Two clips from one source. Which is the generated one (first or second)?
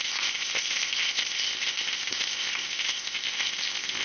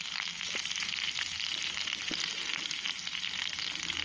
first